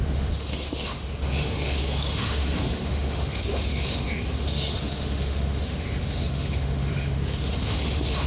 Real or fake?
fake